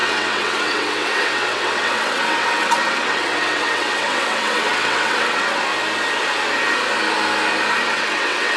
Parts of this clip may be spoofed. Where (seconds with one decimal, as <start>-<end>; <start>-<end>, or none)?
0.0-5.7; 7.8-8.6

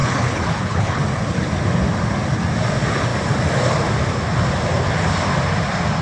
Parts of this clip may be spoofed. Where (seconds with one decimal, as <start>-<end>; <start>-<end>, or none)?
0.0-1.0

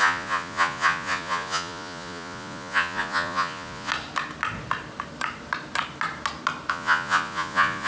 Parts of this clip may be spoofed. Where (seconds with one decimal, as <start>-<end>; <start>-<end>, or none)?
0.0-3.9; 6.7-7.9

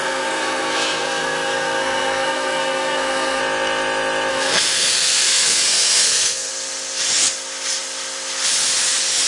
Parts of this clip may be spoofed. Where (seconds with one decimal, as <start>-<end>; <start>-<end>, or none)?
0.0-3.4; 4.3-6.5

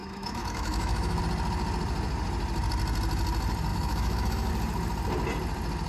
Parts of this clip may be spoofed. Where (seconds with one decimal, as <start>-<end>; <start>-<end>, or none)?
0.0-1.2; 3.7-4.5

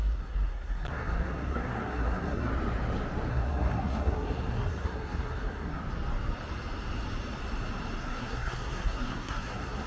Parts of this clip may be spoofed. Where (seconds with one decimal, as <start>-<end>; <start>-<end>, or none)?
0.0-2.5; 3.3-5.8; 8.0-9.9